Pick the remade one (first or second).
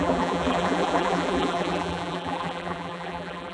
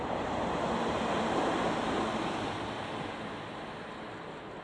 first